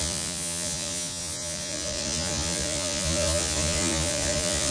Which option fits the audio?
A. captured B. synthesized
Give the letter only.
B